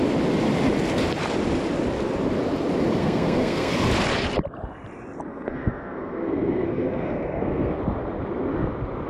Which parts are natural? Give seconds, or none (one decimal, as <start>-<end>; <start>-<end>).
0.0-3.0; 3.7-5.3; 7.8-9.1